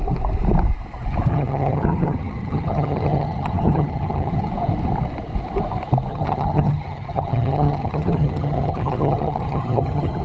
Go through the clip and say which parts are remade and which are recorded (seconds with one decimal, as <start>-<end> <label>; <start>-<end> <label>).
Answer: 0.0-1.3 recorded; 1.3-4.5 remade; 4.5-6.1 recorded; 6.1-10.2 remade